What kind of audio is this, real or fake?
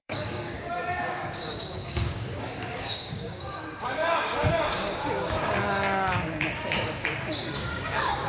fake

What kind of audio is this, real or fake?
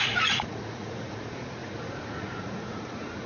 fake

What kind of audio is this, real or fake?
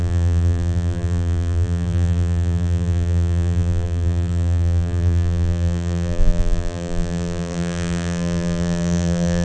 fake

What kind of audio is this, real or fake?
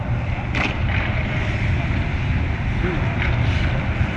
real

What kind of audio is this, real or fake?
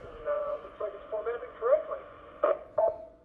fake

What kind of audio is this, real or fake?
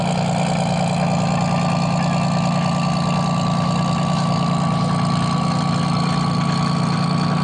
real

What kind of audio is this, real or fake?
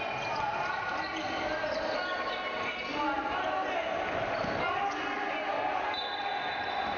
real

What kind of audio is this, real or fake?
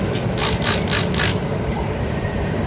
real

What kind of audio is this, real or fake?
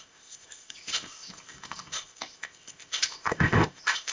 fake